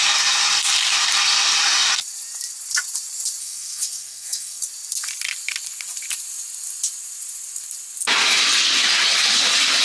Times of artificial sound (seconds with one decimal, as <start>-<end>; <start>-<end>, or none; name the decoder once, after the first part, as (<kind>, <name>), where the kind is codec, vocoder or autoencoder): 3.4-4.6 (codec, SNAC)